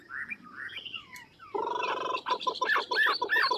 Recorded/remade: remade